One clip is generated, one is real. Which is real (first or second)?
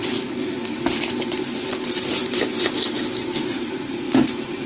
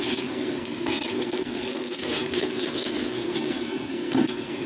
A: first